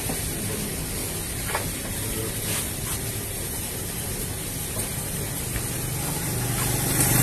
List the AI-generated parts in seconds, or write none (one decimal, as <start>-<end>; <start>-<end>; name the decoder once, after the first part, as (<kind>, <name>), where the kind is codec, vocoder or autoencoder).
none